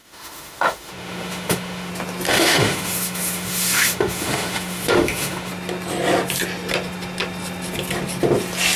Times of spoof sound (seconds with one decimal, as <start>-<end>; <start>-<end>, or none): 0.0-1.9; 2.3-5.5